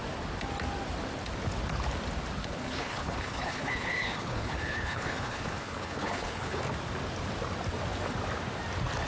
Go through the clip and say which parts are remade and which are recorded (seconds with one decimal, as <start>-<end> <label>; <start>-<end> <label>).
0.0-2.4 recorded; 2.4-6.6 remade; 6.6-9.1 recorded